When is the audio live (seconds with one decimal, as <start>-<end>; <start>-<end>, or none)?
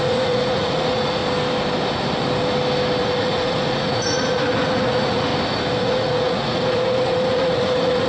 1.2-3.0; 5.3-5.8